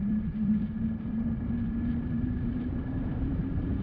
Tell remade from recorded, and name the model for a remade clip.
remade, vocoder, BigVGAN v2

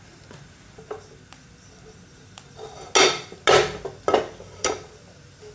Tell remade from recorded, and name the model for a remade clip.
recorded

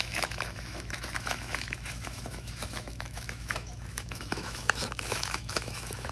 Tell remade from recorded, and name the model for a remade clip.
remade, autoencoder, DAC-VAE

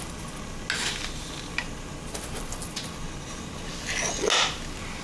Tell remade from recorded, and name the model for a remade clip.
recorded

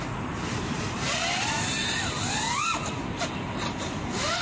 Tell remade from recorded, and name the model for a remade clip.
recorded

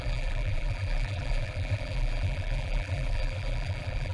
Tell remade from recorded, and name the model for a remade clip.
remade, vocoder, BigVGAN v2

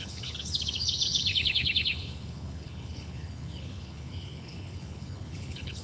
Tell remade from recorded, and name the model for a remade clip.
remade, codec, HILCodec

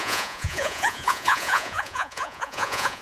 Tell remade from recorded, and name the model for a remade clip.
remade, vocoder, Vocos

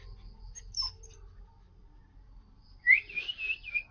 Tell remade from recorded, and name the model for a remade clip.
recorded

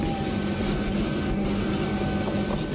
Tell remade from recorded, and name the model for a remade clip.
recorded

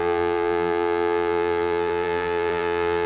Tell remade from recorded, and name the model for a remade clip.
remade, vocoder, BigVGAN v2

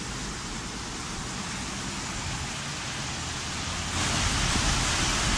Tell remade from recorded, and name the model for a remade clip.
recorded